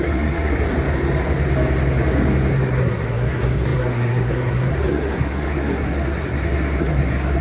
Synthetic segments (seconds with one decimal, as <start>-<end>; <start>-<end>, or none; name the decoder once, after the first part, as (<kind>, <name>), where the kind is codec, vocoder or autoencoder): 0.0-0.7 (codec, SNAC); 2.5-7.4